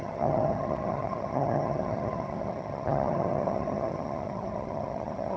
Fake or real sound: fake